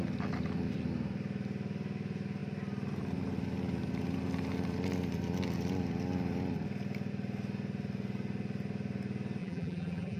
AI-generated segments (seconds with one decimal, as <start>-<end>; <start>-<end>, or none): 9.4-10.2